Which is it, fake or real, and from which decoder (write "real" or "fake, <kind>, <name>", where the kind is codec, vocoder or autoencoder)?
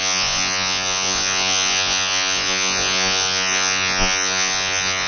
fake, vocoder, Vocos